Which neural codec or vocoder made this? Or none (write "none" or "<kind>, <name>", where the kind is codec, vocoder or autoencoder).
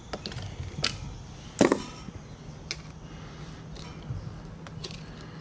none